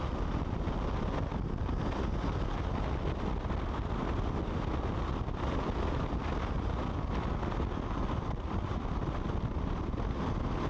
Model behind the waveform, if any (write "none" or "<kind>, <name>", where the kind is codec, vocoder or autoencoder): none